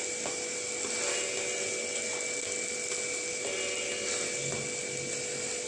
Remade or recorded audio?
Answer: recorded